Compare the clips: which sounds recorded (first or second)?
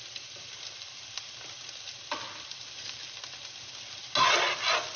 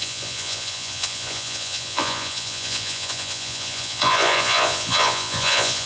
first